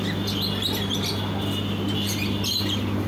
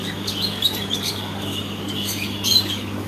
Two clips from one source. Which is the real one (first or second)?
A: first